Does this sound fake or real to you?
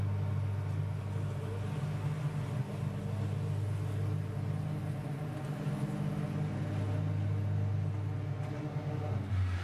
real